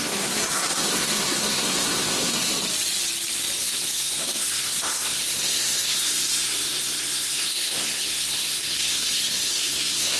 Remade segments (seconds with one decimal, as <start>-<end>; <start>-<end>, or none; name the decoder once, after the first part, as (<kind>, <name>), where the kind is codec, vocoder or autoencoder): 0.0-2.5 (codec, SNAC); 3.6-10.2